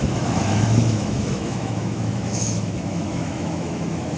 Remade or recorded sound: remade